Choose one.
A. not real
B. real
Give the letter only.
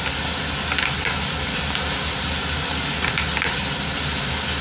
B